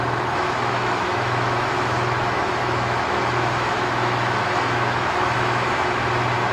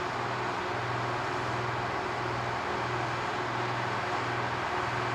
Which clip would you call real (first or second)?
second